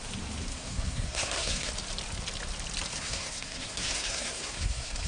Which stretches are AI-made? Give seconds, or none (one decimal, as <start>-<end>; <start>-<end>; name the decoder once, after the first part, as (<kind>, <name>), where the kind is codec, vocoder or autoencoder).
0.5-1.7 (codec, SNAC); 2.9-5.1